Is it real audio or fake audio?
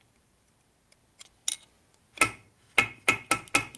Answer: real